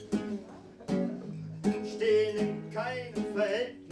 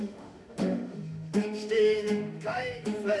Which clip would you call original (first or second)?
first